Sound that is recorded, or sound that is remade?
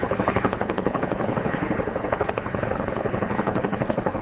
remade